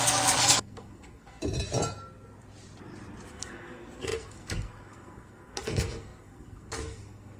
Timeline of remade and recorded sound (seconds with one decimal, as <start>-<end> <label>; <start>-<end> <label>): 0.0-1.4 remade; 1.4-3.3 recorded; 3.3-7.4 remade